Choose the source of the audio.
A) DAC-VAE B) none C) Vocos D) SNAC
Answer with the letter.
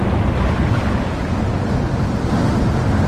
B